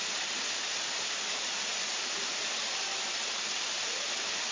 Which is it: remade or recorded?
recorded